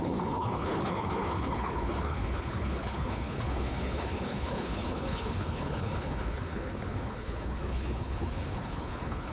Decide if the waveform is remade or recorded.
remade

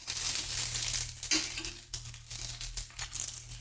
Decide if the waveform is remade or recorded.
recorded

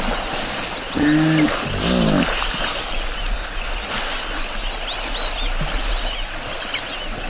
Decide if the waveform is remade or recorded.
recorded